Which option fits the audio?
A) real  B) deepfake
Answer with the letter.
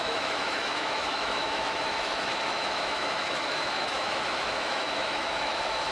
B